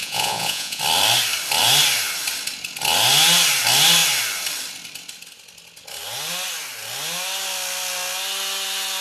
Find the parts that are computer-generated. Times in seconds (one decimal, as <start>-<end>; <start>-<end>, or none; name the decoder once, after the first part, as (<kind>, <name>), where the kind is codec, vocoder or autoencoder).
0.0-0.8 (vocoder, Vocos)